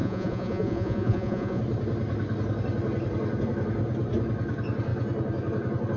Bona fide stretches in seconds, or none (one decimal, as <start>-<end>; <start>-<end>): 1.6-6.0